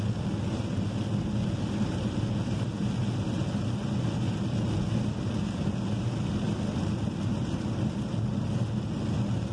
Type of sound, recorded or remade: recorded